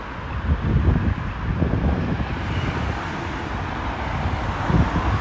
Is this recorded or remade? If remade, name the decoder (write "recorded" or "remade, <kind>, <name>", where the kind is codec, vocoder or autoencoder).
recorded